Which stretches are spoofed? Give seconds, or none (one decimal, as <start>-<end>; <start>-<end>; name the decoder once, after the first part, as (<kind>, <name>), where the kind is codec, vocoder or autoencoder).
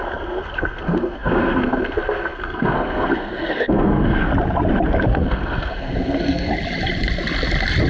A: 0.0-4.3 (codec, SNAC); 5.2-6.5